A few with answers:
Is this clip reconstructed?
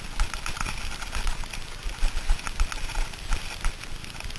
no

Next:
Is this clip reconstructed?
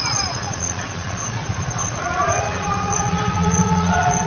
yes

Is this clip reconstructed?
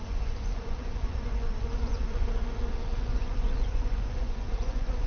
yes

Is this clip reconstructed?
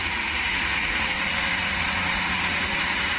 yes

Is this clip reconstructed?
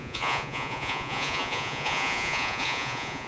yes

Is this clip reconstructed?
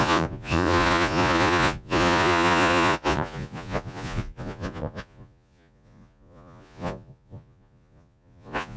yes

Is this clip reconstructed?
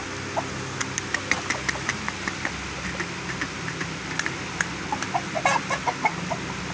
no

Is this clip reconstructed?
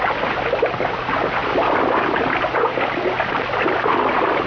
no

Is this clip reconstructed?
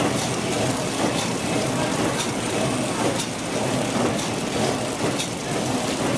no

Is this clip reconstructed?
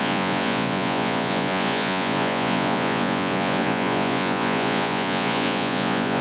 yes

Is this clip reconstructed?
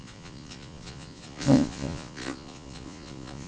yes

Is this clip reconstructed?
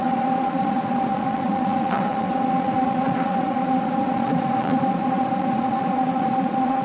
yes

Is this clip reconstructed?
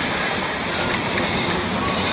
no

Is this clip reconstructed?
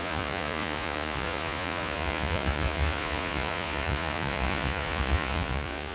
yes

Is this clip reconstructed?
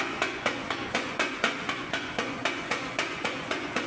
yes